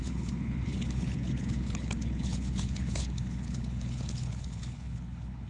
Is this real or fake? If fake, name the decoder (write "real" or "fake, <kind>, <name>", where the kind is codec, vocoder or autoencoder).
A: fake, codec, HILCodec